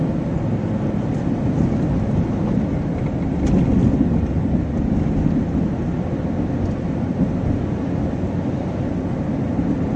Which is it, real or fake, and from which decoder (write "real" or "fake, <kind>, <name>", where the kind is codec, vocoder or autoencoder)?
real